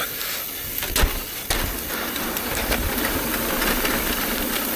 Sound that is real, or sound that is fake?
real